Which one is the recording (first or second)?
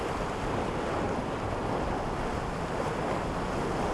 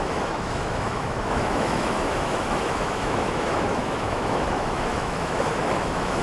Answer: first